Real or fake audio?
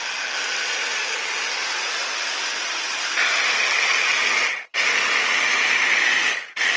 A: real